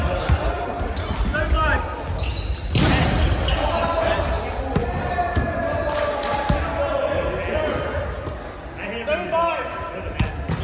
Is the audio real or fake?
real